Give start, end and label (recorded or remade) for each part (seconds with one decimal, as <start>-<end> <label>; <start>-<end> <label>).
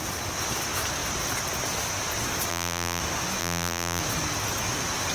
0.0-2.5 recorded; 2.5-3.0 remade; 3.0-3.4 recorded; 3.4-4.0 remade; 4.0-5.1 recorded